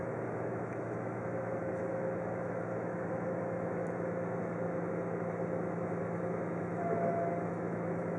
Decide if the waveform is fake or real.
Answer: fake